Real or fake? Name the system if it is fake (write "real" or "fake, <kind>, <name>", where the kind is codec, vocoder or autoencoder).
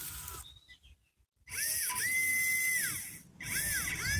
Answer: real